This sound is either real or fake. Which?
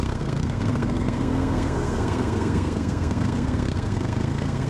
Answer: fake